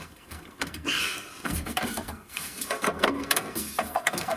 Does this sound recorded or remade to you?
remade